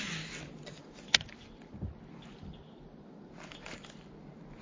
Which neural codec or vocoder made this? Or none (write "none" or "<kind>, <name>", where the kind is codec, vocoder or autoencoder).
none